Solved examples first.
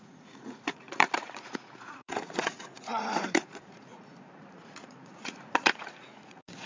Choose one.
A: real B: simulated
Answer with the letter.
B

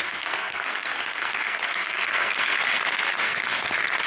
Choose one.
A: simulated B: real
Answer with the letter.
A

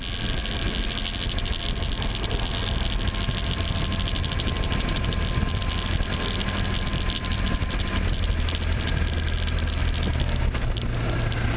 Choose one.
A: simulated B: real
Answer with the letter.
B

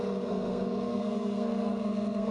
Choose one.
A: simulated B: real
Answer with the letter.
A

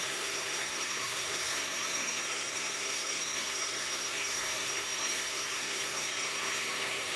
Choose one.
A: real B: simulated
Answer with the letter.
B